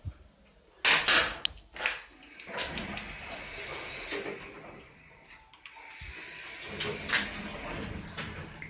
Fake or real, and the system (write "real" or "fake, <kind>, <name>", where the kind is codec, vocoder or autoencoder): real